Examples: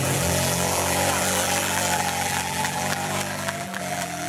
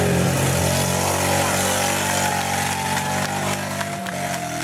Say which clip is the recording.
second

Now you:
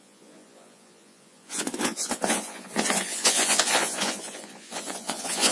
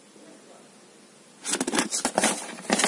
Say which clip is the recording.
second